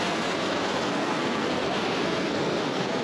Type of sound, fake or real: fake